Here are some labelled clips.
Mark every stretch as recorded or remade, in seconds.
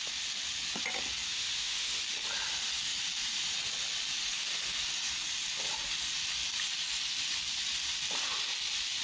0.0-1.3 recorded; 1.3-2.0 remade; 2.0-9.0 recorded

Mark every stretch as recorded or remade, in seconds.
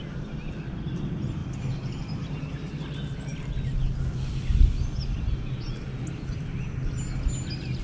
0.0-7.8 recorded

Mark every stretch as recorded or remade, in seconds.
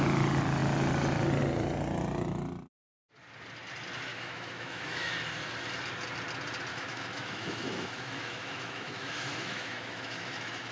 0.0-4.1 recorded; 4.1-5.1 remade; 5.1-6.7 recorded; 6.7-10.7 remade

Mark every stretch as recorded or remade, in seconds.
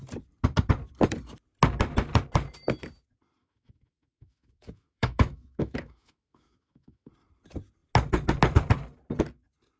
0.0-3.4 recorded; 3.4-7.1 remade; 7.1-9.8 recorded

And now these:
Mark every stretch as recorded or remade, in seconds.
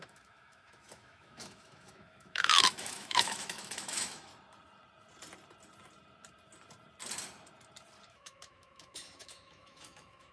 0.0-4.3 remade; 4.3-8.1 recorded; 8.1-10.3 remade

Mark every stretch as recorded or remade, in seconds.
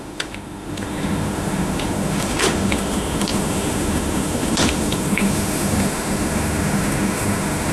0.0-7.7 remade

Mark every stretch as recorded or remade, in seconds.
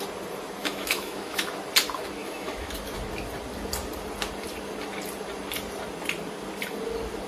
0.0-0.6 recorded; 0.6-1.5 remade; 1.5-2.2 recorded; 2.2-2.7 remade; 2.7-7.3 recorded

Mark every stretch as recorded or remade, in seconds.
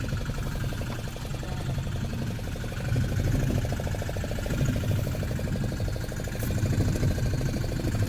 0.0-8.1 recorded